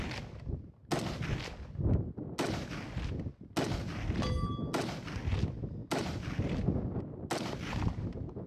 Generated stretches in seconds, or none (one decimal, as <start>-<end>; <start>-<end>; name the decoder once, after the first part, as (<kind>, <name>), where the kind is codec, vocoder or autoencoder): none